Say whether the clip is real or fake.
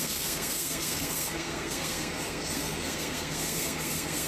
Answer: fake